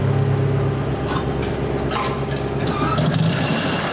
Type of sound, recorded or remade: recorded